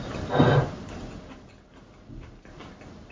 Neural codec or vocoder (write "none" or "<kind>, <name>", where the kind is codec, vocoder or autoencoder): none